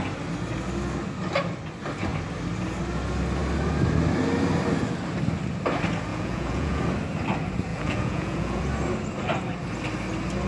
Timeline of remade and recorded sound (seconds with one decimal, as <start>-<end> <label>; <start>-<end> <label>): 0.0-6.1 recorded; 6.1-6.8 remade; 6.8-7.7 recorded; 7.7-8.6 remade; 8.6-10.5 recorded